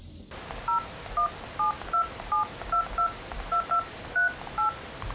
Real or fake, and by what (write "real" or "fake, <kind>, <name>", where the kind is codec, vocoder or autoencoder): real